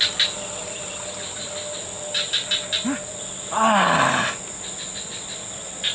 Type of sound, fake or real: real